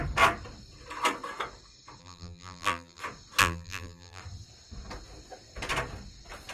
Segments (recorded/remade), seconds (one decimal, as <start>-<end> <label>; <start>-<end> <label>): 0.0-2.0 recorded; 2.0-3.0 remade; 3.0-3.4 recorded; 3.4-4.2 remade; 4.2-6.5 recorded